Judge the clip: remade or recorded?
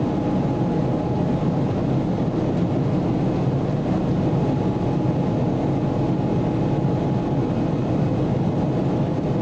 recorded